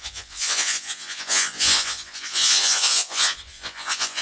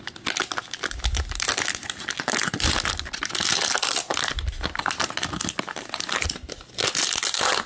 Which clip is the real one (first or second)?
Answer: second